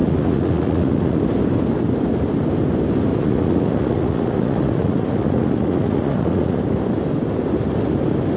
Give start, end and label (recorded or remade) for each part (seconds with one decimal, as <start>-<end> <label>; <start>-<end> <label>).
0.0-1.2 remade; 1.2-3.1 recorded; 3.1-6.6 remade; 6.6-8.4 recorded